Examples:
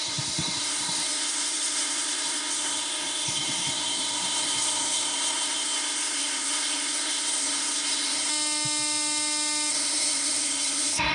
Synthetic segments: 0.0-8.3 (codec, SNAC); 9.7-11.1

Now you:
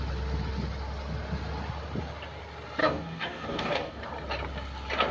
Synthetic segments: 2.8-4.1 (codec, DAC)

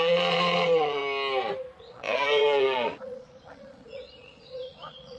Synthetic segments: 0.0-1.0 (vocoder, Vocos); 1.8-5.2

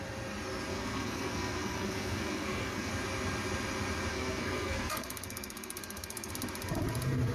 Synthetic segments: 0.7-2.9 (codec, SNAC); 4.1-6.3

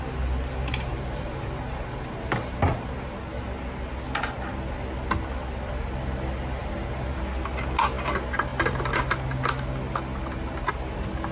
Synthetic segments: 0.9-2.9 (vocoder, BigVGAN v2); 6.6-7.2

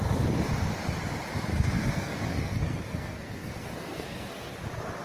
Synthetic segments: 1.5-4.5 (codec, SNAC)